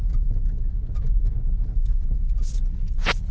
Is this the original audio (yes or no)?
yes